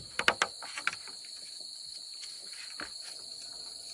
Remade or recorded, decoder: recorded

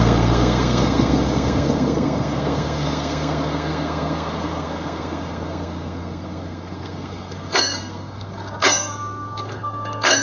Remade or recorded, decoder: remade, codec, SNAC